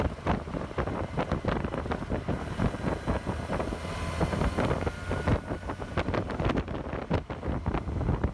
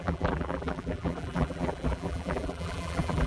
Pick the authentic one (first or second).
first